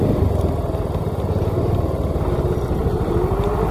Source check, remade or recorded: recorded